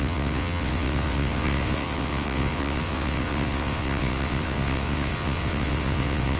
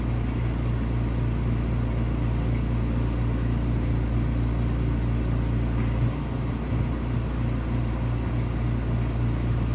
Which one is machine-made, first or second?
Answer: first